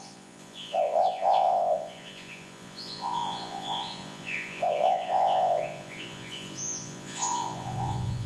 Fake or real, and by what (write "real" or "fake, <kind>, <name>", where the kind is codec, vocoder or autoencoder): fake, vocoder, Vocos